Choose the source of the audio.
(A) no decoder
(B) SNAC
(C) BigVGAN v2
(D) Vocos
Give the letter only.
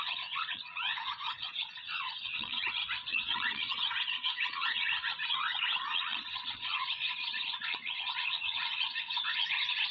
D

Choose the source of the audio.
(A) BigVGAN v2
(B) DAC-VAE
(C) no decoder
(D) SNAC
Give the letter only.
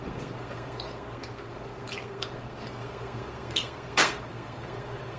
D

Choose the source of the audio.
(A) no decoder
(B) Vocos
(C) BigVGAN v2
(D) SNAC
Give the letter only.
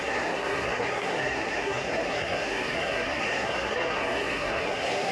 D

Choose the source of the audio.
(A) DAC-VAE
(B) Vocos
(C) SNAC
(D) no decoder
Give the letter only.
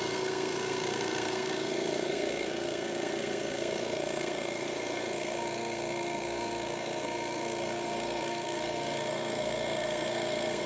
C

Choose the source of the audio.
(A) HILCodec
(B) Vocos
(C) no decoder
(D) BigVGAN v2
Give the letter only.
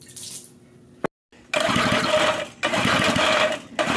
C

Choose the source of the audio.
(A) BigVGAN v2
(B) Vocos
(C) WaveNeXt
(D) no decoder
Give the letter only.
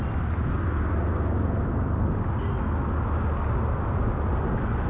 D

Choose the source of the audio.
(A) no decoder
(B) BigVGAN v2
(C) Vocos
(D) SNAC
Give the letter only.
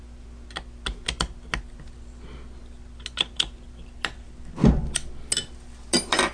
A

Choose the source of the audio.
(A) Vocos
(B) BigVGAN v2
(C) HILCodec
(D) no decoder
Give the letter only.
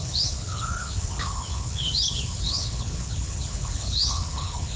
C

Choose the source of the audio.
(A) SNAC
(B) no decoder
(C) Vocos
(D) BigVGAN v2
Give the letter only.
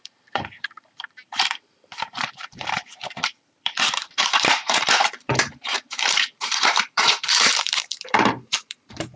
D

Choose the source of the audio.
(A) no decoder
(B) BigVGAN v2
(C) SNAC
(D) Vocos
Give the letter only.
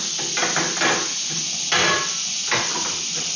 A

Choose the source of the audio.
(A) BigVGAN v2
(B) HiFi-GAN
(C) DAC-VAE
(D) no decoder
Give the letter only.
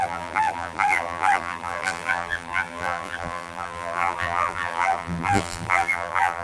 A